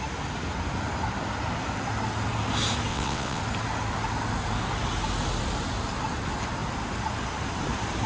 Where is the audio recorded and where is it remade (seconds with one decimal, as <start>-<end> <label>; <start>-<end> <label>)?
0.0-2.9 recorded; 2.9-3.4 remade; 3.4-8.1 recorded